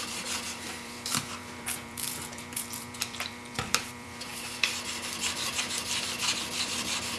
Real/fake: fake